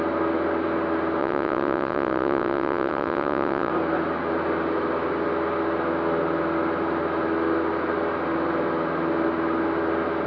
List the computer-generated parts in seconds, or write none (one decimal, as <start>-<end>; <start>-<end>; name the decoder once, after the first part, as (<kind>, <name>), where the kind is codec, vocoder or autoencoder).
1.2-3.7 (vocoder, WaveNeXt)